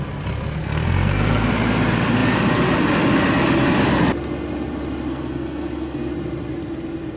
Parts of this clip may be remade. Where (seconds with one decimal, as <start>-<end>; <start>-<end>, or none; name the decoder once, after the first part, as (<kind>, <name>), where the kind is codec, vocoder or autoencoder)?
0.6-1.5 (codec, SNAC); 5.1-6.1